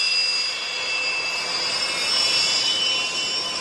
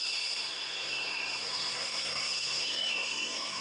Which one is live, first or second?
first